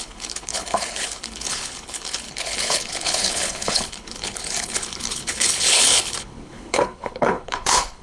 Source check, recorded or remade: remade